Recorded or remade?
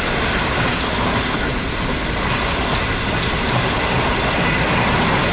recorded